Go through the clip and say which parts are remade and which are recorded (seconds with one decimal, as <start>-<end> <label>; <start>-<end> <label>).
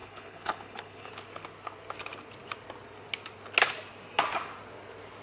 0.0-1.1 remade; 1.1-5.2 recorded